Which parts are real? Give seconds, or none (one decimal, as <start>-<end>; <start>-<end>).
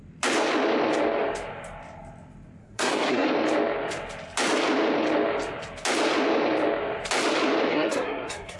0.0-2.6; 3.3-7.7